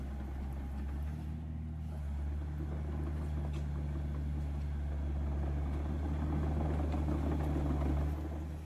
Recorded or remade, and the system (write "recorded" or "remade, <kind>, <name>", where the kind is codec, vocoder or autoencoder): recorded